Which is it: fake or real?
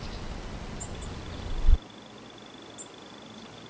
real